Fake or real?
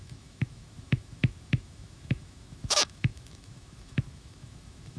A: fake